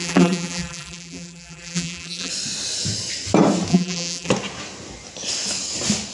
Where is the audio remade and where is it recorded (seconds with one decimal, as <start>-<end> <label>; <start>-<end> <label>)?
0.0-2.3 remade; 2.3-3.7 recorded; 3.7-4.3 remade; 4.3-6.1 recorded